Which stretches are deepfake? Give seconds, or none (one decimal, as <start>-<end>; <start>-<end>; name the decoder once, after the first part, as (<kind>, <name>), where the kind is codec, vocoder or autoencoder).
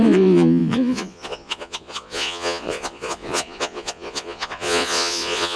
0.0-5.6 (vocoder, Vocos)